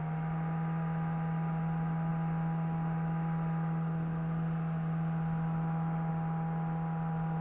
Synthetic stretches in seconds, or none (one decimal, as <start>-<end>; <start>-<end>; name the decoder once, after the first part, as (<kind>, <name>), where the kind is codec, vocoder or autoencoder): none